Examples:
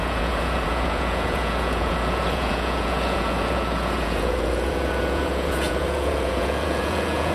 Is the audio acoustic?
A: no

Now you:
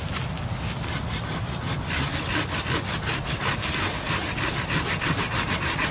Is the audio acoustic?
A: yes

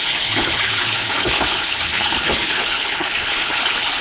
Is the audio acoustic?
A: no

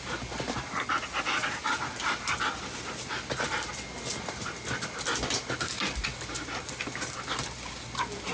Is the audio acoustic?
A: yes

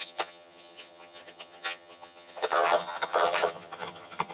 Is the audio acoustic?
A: no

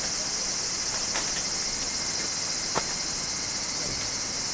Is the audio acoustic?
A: yes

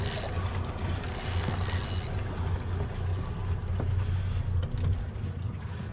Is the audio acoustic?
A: yes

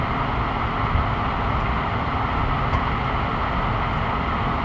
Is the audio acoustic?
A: yes